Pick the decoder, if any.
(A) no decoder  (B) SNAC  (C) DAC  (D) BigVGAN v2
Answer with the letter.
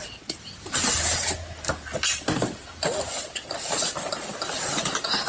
A